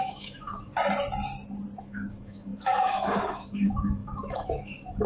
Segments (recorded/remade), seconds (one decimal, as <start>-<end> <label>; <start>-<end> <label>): 0.0-0.7 remade; 0.7-1.8 recorded; 1.8-5.1 remade